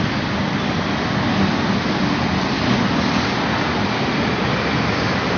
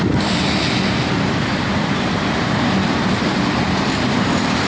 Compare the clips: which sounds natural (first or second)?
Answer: first